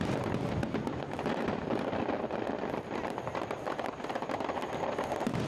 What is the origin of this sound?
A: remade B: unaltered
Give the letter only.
B